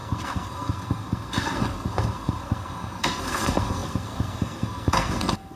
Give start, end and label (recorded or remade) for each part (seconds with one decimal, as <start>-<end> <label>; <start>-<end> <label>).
0.0-5.6 remade